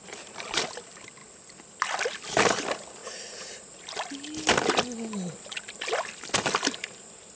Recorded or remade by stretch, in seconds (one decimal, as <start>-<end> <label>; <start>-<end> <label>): 0.0-3.0 recorded; 3.0-3.8 remade; 3.8-7.4 recorded